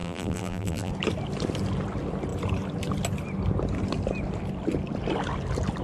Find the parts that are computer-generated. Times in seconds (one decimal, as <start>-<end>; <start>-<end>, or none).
0.0-0.9